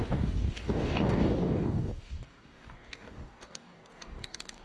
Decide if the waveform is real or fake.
fake